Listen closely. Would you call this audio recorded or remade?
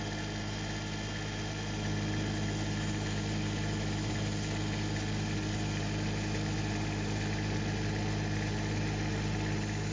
recorded